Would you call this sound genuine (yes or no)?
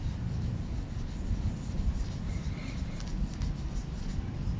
yes